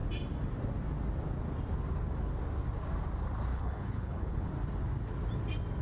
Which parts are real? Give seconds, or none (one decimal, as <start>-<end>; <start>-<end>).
0.0-3.5; 4.5-5.8